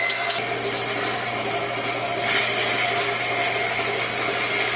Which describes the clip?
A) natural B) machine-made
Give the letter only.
A